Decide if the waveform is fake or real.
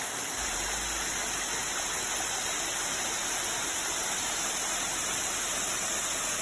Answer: real